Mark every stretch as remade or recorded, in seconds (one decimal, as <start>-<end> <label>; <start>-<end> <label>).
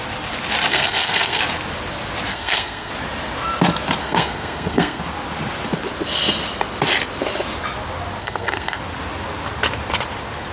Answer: 0.0-0.7 recorded; 0.7-1.4 remade; 1.4-2.3 recorded; 2.3-2.9 remade; 2.9-4.0 recorded; 4.0-5.0 remade; 5.0-8.2 recorded; 8.2-8.8 remade; 8.8-10.5 recorded